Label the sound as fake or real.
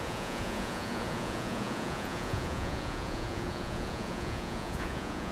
fake